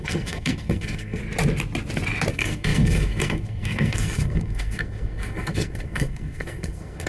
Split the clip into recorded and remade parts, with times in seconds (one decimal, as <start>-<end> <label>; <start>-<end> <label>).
0.0-1.2 remade; 1.2-2.3 recorded; 2.3-7.1 remade